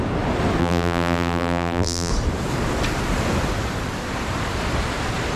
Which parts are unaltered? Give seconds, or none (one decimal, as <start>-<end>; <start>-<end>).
0.0-0.6; 2.1-5.4